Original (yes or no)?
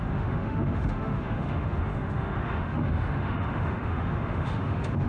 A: no